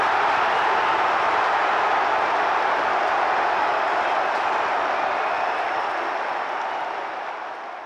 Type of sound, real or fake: real